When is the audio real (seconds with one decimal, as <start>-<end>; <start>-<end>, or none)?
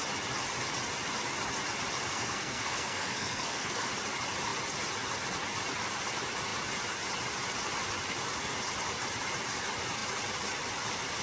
0.0-2.1; 3.9-11.2